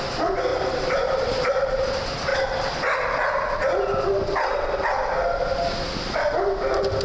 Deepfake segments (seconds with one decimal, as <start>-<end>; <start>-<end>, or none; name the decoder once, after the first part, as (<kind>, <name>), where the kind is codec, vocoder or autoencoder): 0.5-1.9 (vocoder, BigVGAN v2); 2.3-3.0